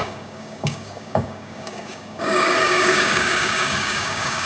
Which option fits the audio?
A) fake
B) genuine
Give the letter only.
A